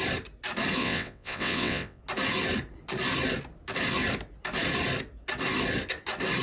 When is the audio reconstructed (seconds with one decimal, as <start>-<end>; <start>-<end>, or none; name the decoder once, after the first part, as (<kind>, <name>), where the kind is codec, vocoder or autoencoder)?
0.8-2.0 (vocoder, WaveNeXt)